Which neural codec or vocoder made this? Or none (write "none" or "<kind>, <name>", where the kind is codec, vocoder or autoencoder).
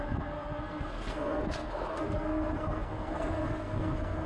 codec, SNAC